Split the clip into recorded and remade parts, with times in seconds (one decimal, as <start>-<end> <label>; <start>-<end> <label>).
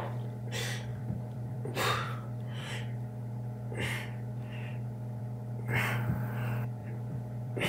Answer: 0.0-0.9 recorded; 0.9-2.7 remade; 2.7-6.8 recorded; 6.8-7.7 remade